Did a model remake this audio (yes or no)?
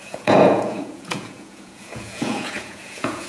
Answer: yes